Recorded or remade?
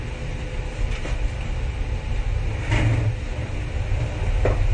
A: recorded